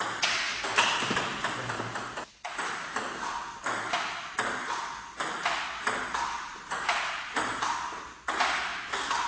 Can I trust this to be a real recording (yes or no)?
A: yes